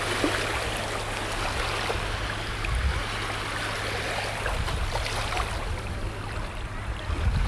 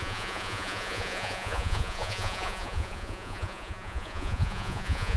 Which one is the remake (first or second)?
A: second